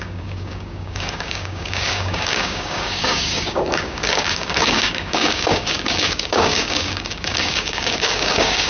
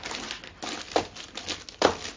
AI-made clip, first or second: first